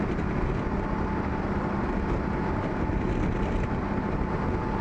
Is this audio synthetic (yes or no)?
no